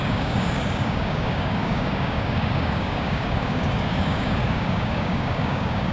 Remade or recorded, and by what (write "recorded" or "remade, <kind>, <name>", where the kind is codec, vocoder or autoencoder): remade, codec, DAC